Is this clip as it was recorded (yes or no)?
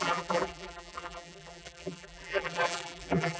no